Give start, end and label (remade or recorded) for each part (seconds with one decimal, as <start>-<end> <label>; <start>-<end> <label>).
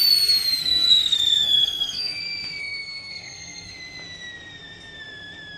0.0-0.6 recorded; 0.6-2.2 remade; 2.2-2.6 recorded; 2.6-3.7 remade; 3.7-5.6 recorded